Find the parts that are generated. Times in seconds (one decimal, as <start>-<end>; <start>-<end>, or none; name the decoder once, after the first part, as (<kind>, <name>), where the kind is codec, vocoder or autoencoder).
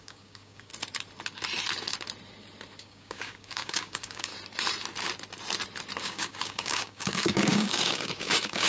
0.0-0.7 (codec, DAC); 2.8-4.3; 6.0-8.7